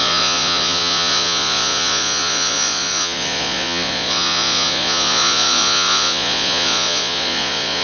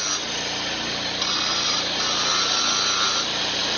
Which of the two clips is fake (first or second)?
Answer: first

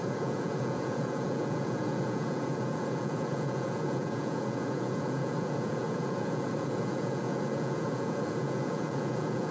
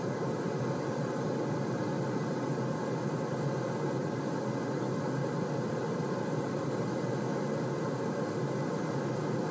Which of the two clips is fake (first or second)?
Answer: first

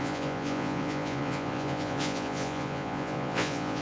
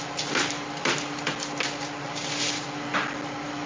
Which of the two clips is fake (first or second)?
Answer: first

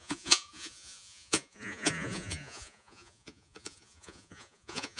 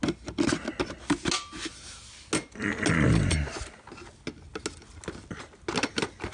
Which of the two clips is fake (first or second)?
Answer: first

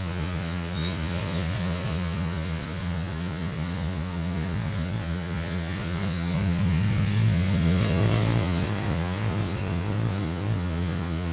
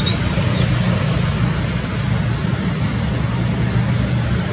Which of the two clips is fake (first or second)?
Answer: first